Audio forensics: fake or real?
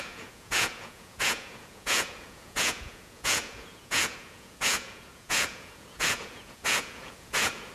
fake